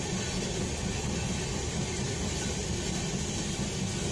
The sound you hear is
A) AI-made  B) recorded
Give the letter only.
B